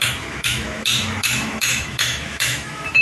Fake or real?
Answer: fake